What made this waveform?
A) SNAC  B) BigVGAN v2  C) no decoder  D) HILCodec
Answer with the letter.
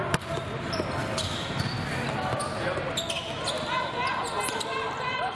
C